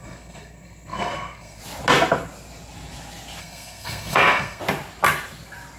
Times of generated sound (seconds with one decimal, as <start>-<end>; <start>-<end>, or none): 0.0-1.6; 3.4-4.6